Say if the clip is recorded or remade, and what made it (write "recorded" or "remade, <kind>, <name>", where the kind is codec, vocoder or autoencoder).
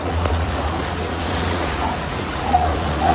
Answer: remade, vocoder, Vocos